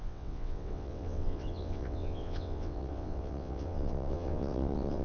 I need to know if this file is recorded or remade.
remade